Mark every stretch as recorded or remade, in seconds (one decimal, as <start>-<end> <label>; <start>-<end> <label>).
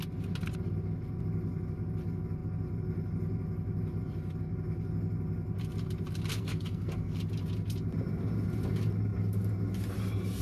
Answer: 0.0-6.3 recorded; 6.3-7.2 remade; 7.2-10.4 recorded